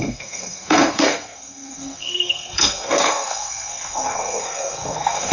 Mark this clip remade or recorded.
remade